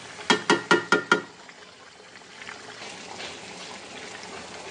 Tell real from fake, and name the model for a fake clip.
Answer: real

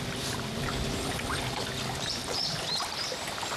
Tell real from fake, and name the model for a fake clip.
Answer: fake, vocoder, BigVGAN v2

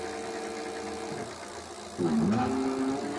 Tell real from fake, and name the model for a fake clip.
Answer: real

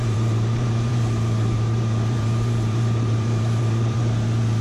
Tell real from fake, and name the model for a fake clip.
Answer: fake, vocoder, BigVGAN v2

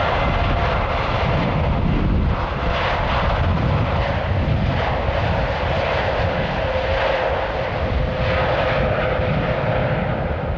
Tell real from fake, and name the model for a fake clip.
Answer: real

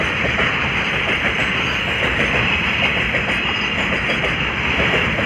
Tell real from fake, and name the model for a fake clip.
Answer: fake, vocoder, BigVGAN v2